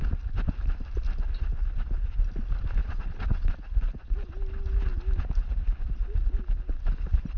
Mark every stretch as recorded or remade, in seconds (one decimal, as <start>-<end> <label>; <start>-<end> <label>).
0.0-2.8 recorded; 2.8-3.5 remade; 3.5-7.4 recorded